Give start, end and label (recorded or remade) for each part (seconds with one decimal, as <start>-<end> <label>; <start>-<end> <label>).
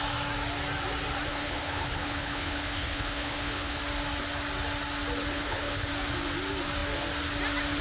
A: 0.0-1.3 recorded; 1.3-3.8 remade; 3.8-5.3 recorded; 5.3-5.9 remade; 5.9-7.8 recorded